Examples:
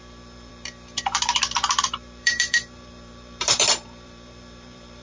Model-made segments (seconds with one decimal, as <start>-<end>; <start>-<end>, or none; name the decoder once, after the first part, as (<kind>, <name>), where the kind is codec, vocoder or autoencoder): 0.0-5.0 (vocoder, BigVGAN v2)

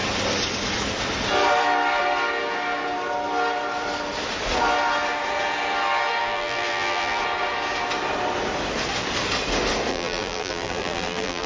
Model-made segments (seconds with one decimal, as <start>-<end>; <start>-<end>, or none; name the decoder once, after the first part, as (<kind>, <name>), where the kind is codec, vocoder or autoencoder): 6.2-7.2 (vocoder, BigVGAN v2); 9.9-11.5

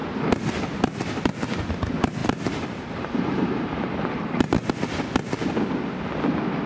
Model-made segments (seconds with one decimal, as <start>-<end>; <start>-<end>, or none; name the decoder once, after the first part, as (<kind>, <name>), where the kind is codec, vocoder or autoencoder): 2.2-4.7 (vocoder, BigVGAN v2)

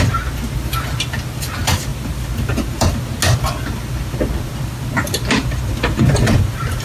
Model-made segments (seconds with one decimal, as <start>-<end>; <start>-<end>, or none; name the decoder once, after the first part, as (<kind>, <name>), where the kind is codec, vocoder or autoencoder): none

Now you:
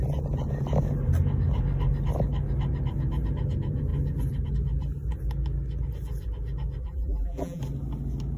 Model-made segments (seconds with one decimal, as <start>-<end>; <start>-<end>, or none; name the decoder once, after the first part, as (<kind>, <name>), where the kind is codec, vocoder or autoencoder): 6.8-7.6 (vocoder, BigVGAN v2)

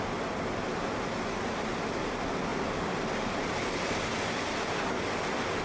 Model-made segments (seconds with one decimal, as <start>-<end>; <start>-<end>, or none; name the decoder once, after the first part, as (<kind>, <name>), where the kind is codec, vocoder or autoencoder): 2.5-4.1 (vocoder, BigVGAN v2)